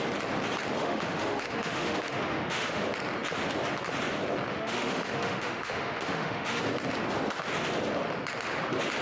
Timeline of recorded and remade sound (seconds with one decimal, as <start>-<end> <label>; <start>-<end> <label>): 0.0-0.8 recorded; 0.8-2.8 remade; 2.8-4.5 recorded; 4.5-6.6 remade; 6.6-9.0 recorded